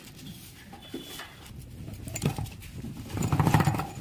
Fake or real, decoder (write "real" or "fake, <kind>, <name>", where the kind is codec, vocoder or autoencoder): real